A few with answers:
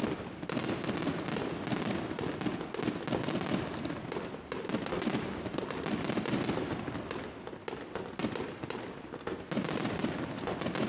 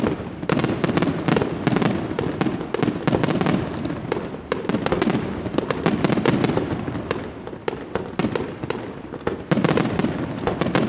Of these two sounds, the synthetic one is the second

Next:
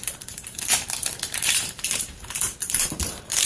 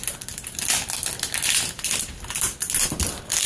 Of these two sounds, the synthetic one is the first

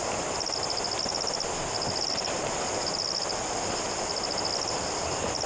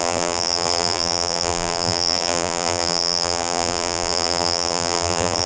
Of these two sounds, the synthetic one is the second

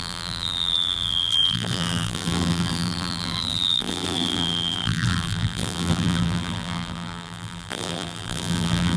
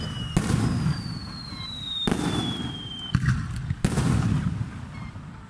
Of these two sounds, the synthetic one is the first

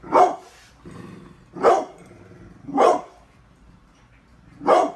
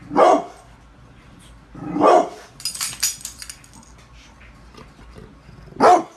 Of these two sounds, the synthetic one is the first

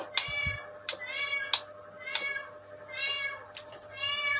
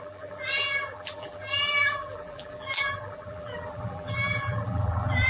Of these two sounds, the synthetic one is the second